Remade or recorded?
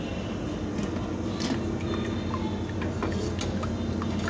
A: recorded